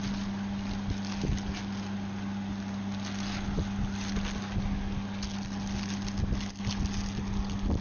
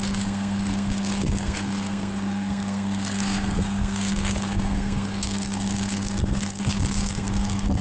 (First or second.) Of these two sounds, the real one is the first